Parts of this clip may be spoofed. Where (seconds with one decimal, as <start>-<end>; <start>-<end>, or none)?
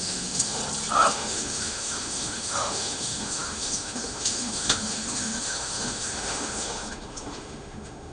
0.0-0.6; 1.1-8.1